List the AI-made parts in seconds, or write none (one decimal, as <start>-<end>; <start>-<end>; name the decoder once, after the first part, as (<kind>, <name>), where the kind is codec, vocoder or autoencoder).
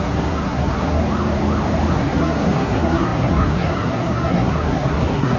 0.0-1.0 (codec, SNAC); 1.9-5.4